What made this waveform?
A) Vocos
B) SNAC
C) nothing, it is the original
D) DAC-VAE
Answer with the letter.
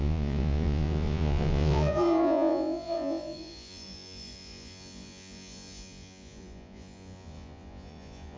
A